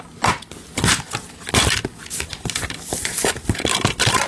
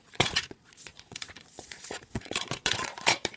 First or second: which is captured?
first